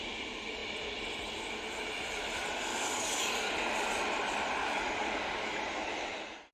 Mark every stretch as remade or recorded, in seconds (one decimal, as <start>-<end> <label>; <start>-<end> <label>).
0.0-2.7 recorded; 2.7-3.5 remade; 3.5-4.6 recorded; 4.6-5.6 remade; 5.6-6.5 recorded